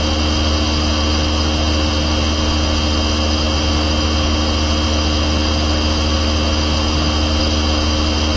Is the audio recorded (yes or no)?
yes